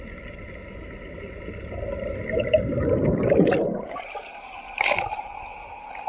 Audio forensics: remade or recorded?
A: recorded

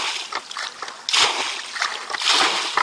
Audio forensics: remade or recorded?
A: recorded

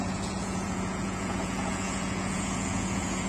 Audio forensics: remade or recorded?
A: remade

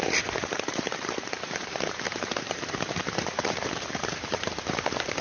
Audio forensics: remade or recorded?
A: remade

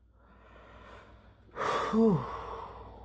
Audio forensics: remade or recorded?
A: recorded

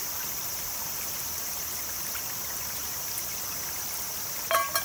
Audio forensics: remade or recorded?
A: recorded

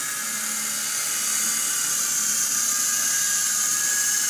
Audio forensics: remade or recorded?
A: recorded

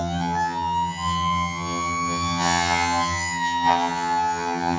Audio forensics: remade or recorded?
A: remade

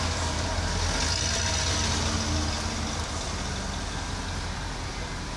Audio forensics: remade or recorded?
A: recorded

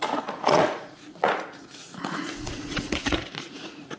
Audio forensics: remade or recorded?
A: remade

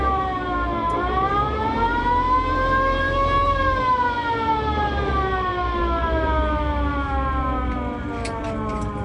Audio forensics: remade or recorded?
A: remade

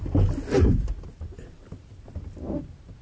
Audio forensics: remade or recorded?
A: recorded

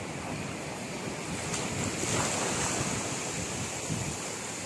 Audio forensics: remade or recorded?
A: recorded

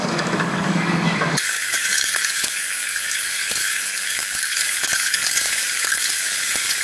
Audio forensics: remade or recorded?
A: remade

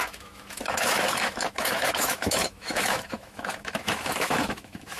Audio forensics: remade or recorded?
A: remade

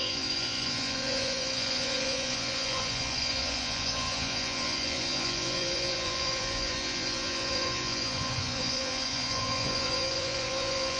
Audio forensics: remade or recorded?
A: remade